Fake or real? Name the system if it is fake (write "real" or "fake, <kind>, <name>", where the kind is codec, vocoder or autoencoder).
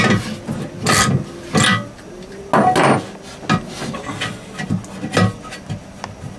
real